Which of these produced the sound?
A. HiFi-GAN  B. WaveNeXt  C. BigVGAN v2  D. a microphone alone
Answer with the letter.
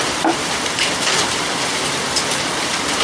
C